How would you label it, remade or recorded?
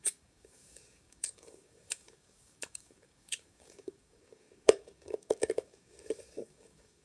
remade